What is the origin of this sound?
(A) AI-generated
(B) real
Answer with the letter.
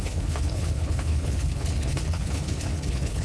A